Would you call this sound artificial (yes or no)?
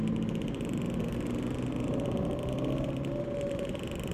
no